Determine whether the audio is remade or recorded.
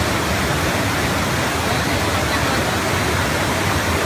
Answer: recorded